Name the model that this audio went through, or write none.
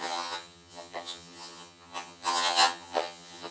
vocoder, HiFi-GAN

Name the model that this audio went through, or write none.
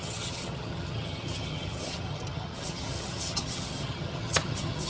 vocoder, HiFi-GAN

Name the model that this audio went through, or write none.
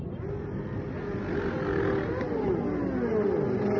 none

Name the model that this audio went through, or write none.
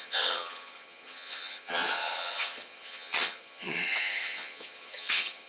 vocoder, HiFi-GAN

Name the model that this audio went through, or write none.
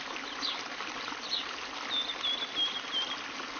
none